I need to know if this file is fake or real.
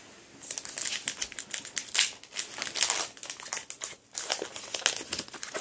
real